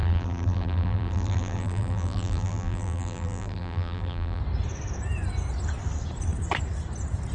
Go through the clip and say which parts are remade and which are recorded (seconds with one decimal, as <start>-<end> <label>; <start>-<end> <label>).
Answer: 0.0-4.4 remade; 4.4-7.3 recorded